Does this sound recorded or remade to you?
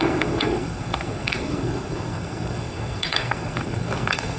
remade